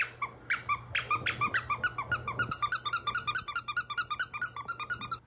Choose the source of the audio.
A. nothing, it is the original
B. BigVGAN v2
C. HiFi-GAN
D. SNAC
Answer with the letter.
A